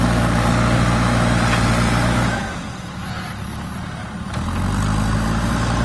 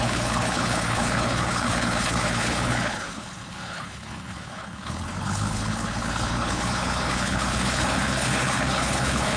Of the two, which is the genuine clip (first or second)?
first